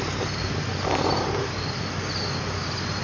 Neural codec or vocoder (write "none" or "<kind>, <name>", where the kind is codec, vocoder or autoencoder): none